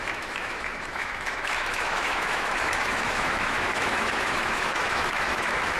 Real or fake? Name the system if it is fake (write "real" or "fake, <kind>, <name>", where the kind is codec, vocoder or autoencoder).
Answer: fake, autoencoder, DAC-VAE